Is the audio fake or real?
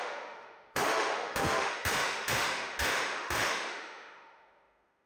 fake